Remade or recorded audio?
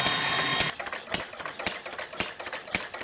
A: recorded